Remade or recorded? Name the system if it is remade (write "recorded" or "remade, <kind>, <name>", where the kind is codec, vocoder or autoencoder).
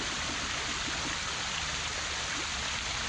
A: recorded